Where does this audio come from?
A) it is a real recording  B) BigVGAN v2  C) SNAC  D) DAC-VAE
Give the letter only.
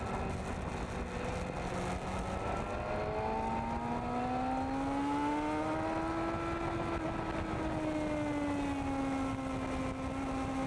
A